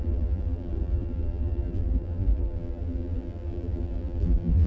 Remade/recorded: remade